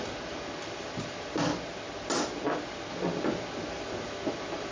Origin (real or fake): real